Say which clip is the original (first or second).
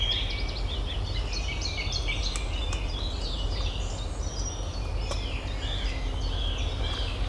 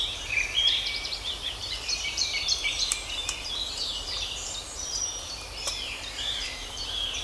first